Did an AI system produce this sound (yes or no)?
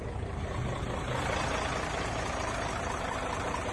yes